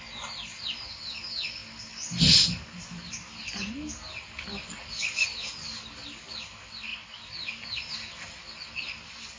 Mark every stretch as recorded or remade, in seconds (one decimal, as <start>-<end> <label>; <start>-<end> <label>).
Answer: 0.0-9.4 recorded